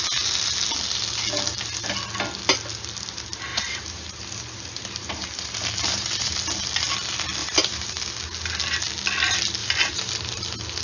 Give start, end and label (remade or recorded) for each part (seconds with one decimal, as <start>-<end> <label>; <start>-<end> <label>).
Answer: 0.0-3.5 recorded; 3.5-6.3 remade; 6.3-7.4 recorded; 7.4-8.0 remade; 8.0-9.6 recorded; 9.6-10.4 remade; 10.4-10.8 recorded